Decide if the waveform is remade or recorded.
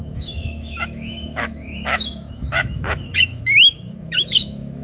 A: remade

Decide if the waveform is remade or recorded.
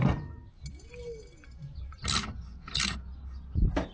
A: recorded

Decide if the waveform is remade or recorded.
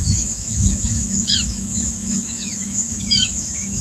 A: remade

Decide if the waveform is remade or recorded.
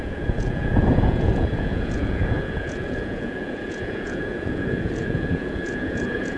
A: remade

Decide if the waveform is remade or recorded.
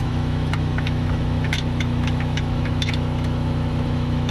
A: remade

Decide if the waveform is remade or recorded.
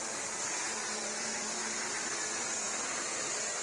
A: recorded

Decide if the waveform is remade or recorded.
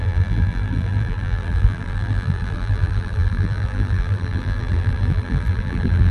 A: remade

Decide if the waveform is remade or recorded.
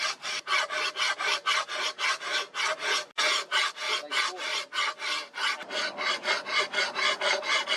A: recorded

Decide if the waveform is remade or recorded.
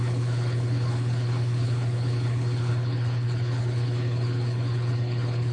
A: remade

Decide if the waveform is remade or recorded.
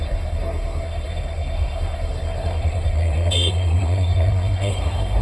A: remade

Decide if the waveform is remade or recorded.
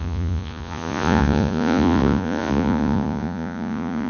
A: remade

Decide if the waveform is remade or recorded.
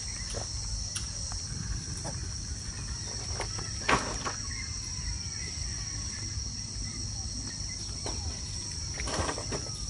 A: recorded